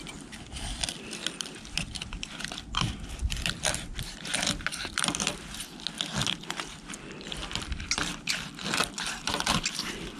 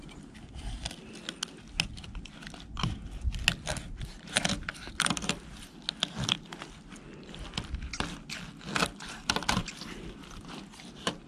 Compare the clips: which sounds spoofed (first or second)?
first